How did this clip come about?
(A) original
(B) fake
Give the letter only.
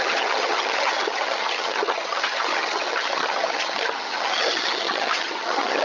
B